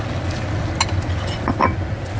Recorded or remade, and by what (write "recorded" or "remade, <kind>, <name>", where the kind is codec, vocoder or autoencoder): recorded